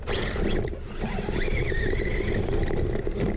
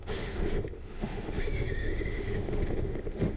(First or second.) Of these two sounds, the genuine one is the first